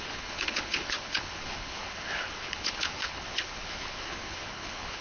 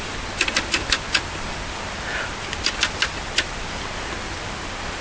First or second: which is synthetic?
first